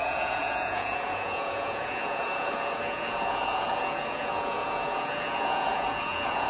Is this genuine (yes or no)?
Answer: no